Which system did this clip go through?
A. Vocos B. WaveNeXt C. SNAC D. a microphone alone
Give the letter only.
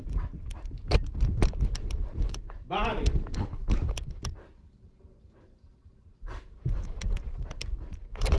D